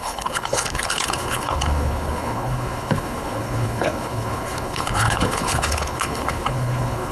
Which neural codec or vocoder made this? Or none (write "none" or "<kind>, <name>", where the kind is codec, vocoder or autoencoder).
codec, HILCodec